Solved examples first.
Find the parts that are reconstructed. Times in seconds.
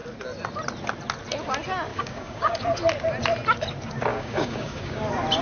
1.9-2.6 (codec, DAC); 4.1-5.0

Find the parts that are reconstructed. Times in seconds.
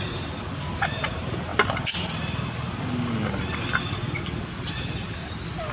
none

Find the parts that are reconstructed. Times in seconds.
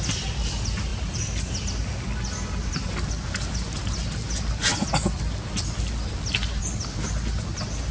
none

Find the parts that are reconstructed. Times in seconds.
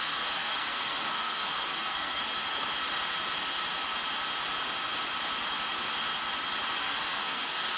0.0-2.3 (codec, SNAC); 6.8-7.8